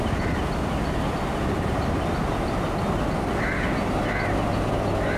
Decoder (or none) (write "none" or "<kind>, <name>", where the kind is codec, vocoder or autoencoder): none